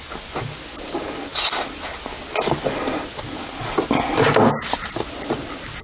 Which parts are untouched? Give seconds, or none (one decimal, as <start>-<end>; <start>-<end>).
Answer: 0.0-5.8

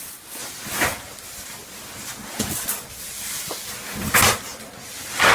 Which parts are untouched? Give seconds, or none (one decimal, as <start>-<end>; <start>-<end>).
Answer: 0.0-0.4; 1.2-5.3

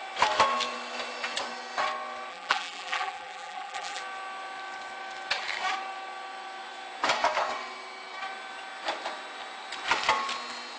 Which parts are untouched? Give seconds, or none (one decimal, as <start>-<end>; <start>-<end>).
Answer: 0.0-2.3; 4.0-10.8

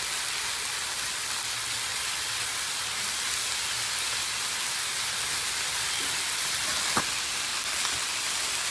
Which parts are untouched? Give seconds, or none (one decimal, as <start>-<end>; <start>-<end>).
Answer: 0.0-1.9; 3.2-8.7

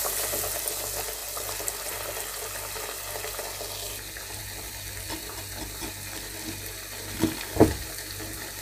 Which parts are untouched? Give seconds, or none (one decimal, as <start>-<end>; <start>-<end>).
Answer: 0.0-8.6

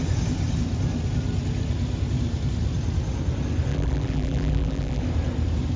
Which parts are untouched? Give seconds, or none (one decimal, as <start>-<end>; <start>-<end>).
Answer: 0.0-3.7; 5.0-5.8

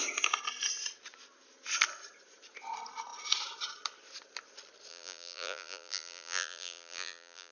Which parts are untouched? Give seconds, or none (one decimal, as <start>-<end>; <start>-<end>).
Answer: 0.0-4.9

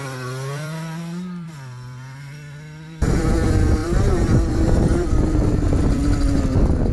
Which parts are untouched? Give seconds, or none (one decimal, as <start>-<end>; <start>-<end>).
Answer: none